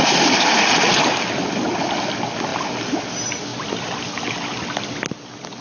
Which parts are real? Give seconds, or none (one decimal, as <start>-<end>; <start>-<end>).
0.0-5.6